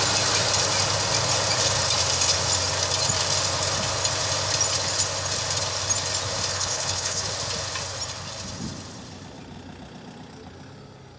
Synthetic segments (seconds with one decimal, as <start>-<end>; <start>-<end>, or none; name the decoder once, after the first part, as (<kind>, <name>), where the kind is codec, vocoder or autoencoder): 6.5-7.2 (codec, HILCodec)